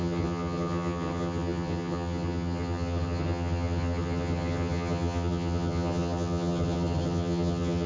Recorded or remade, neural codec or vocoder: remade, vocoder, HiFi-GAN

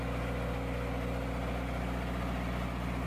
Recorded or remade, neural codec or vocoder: recorded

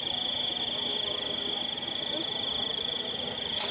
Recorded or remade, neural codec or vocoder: recorded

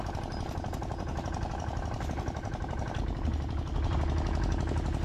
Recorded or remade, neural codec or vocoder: recorded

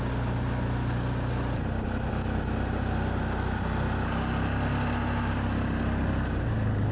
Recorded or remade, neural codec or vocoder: recorded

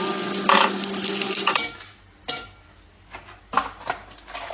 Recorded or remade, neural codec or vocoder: recorded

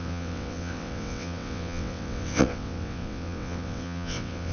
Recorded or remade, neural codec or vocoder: remade, vocoder, WaveNeXt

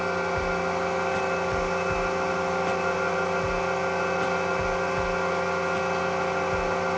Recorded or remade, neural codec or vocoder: recorded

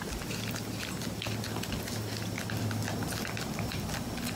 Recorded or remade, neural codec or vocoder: recorded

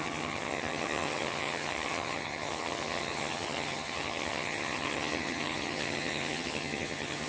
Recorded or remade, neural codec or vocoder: remade, vocoder, HiFi-GAN